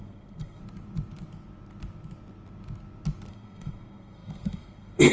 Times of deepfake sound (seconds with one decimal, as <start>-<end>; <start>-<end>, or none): 0.0-0.6; 3.3-5.1